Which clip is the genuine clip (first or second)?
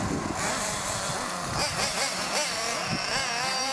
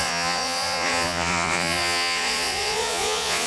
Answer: first